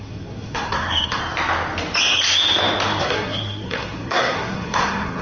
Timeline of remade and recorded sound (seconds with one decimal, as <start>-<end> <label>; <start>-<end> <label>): 0.0-1.2 remade; 1.2-3.0 recorded; 3.0-5.2 remade

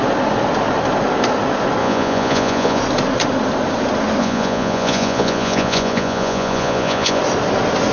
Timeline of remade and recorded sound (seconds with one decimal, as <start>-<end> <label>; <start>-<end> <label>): 0.0-1.8 recorded; 1.8-2.8 remade; 2.8-4.2 recorded; 4.2-7.2 remade; 7.2-7.9 recorded